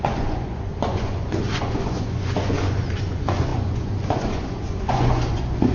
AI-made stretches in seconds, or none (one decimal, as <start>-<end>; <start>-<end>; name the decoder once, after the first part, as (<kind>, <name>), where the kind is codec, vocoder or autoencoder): 0.0-5.7 (vocoder, Vocos)